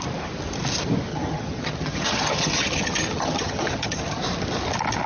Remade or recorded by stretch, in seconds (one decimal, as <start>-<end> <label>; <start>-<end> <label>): 0.0-1.1 recorded; 1.1-4.2 remade; 4.2-5.1 recorded